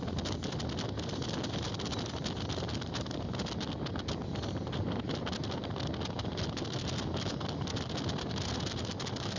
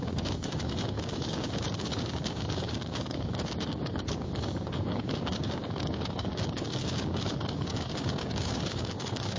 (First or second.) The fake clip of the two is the second